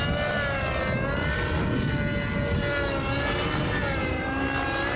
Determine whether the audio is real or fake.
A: real